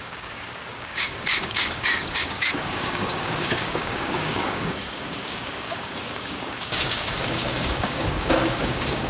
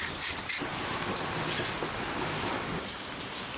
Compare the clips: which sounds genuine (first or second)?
second